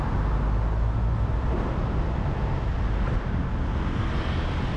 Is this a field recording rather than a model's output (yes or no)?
yes